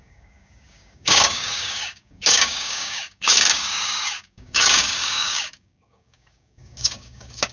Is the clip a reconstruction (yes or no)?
yes